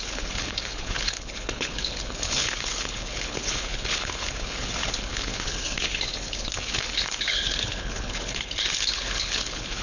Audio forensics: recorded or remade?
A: remade